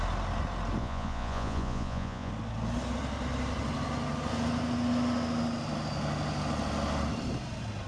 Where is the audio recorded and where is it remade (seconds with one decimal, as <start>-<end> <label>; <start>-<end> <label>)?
0.0-0.8 recorded; 0.8-2.3 remade; 2.3-7.9 recorded